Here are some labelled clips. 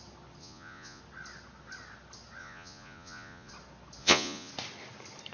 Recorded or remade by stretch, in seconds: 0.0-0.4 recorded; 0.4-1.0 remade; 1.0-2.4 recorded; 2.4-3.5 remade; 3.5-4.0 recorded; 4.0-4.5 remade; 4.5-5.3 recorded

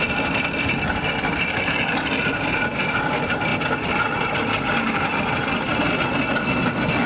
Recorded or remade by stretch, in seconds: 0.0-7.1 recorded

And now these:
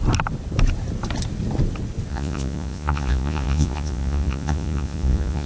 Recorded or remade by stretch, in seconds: 0.0-2.1 recorded; 2.1-5.5 remade

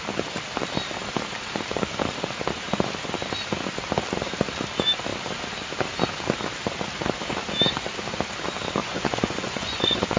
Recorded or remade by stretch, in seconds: 0.0-8.8 recorded; 8.8-10.2 remade

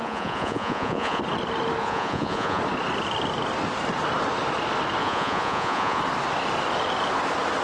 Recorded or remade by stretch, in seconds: 0.0-1.2 remade; 1.2-1.8 recorded; 1.8-2.6 remade; 2.6-5.0 recorded; 5.0-6.0 remade; 6.0-7.6 recorded

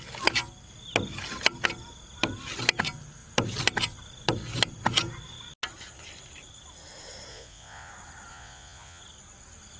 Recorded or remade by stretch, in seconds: 0.0-7.3 recorded; 7.3-7.9 remade; 7.9-8.3 recorded; 8.3-9.0 remade; 9.0-9.8 recorded

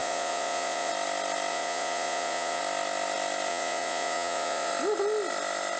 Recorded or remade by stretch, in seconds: 0.0-0.9 remade; 0.9-1.5 recorded; 1.5-2.6 remade; 2.6-3.5 recorded; 3.5-4.7 remade; 4.7-5.8 recorded

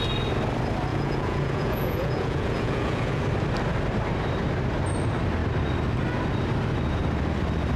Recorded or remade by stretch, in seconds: 0.0-0.9 recorded; 0.9-3.2 remade; 3.2-7.8 recorded